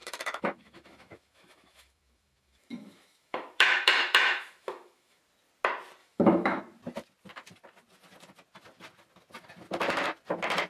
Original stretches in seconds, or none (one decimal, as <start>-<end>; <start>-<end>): 5.2-6.0; 6.6-10.7